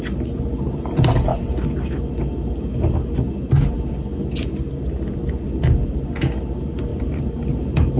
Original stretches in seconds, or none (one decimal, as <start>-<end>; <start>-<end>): 0.0-8.0